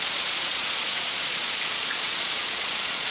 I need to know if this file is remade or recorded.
remade